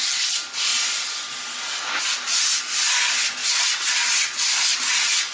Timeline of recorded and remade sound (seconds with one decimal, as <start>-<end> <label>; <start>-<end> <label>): 0.0-0.7 remade; 0.7-2.9 recorded; 2.9-3.4 remade; 3.4-4.2 recorded; 4.2-5.3 remade